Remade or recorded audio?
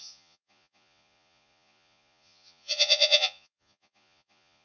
remade